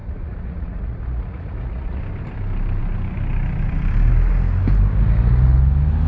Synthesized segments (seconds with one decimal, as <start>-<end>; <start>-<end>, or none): 0.0-2.0